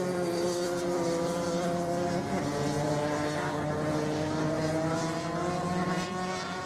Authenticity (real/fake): real